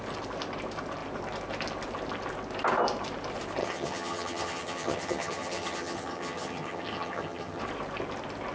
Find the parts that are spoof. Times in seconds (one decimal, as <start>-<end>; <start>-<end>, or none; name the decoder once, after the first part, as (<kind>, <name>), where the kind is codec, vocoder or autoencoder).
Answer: 3.6-7.6 (vocoder, HiFi-GAN)